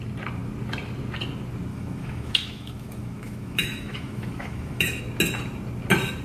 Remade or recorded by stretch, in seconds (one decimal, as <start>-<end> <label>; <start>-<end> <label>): 0.0-1.7 recorded; 1.7-5.0 remade; 5.0-6.2 recorded